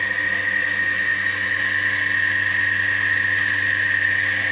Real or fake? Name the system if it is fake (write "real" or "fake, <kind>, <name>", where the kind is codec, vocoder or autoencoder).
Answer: real